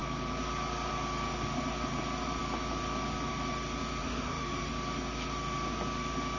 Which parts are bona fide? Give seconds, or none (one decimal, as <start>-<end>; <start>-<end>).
0.0-4.0; 4.7-6.4